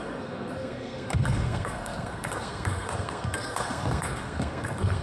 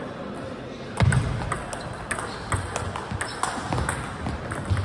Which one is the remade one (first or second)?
first